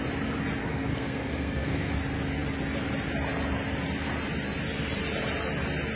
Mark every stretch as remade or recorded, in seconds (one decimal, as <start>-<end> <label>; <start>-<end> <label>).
0.0-0.6 recorded; 0.6-1.9 remade; 1.9-6.0 recorded